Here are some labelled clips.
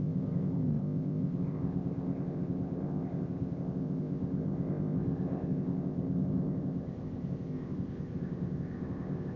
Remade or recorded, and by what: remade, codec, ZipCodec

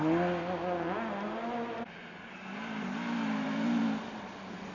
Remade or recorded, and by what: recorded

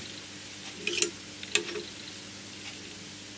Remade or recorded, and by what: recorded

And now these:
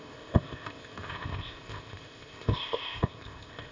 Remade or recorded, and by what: remade, codec, ZipCodec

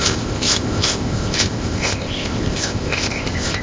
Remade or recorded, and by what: remade, codec, ZipCodec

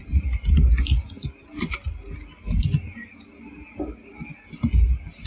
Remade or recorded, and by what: recorded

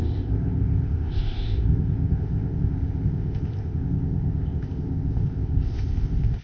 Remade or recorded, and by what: remade, codec, ZipCodec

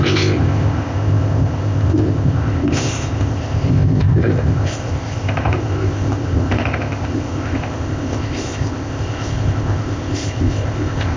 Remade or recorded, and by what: remade, codec, ZipCodec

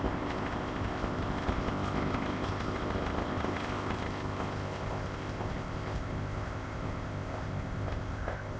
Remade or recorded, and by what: remade, codec, ZipCodec